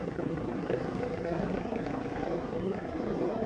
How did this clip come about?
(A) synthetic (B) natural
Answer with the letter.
A